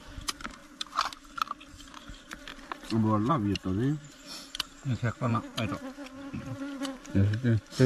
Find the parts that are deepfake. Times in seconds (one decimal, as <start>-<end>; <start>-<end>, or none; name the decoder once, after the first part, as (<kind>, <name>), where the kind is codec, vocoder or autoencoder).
0.0-0.6 (vocoder, BigVGAN v2); 2.0-2.5; 3.3-5.3; 6.8-7.9